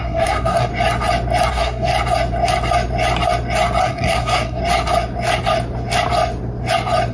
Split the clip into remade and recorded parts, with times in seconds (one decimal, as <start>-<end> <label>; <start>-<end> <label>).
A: 0.0-0.7 remade; 0.7-1.5 recorded; 1.5-1.9 remade; 1.9-3.8 recorded; 3.8-4.6 remade; 4.6-7.1 recorded